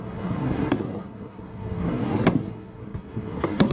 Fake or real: fake